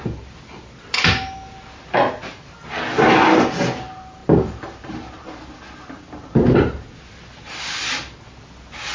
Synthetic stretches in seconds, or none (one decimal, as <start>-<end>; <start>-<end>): none

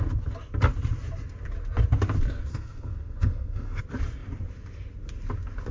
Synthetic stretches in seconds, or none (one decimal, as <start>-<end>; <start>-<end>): 2.5-3.8

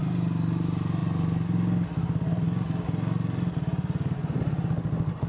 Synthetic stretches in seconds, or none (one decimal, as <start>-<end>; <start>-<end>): none